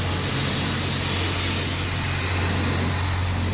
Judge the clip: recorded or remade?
recorded